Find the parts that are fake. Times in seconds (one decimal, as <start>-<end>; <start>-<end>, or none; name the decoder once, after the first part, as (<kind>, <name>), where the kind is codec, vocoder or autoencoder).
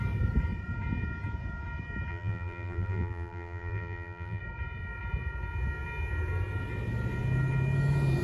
2.1-4.4 (vocoder, BigVGAN v2)